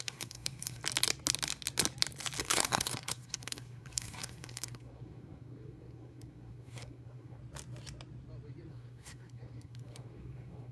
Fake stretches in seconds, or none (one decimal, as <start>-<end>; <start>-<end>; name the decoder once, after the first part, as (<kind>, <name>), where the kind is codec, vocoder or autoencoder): 0.0-0.8 (codec, SNAC); 2.4-7.4; 8.7-10.7